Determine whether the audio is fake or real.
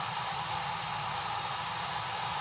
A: real